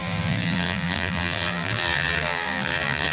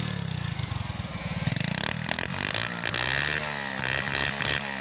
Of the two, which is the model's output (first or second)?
first